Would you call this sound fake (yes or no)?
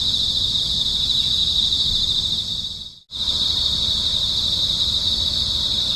no